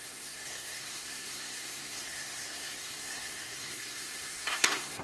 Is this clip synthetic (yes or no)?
yes